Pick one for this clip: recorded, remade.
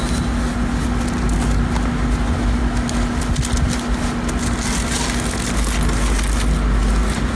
recorded